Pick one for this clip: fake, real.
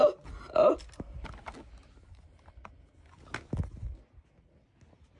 real